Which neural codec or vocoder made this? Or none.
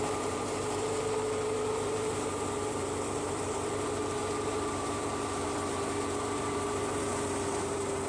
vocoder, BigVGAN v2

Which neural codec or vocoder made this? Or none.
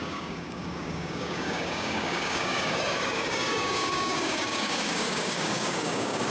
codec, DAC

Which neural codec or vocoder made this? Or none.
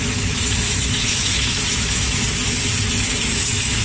autoencoder, DAC-VAE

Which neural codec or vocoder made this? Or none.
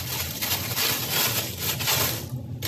none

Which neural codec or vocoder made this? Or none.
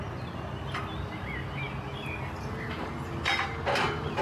none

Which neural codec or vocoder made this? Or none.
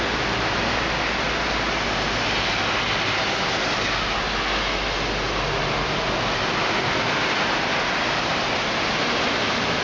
none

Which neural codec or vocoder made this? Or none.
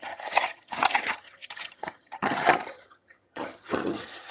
vocoder, HiFi-GAN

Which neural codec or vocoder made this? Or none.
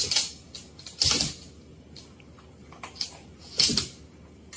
none